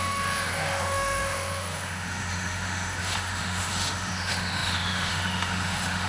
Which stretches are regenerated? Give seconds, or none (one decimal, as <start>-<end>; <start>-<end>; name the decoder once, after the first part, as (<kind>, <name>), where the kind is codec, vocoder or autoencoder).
0.0-6.1 (autoencoder, DAC-VAE)